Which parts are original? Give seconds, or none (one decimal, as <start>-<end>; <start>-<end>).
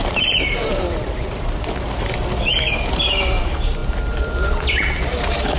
3.8-4.7